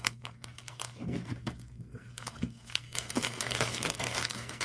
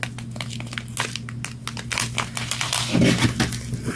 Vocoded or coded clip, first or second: first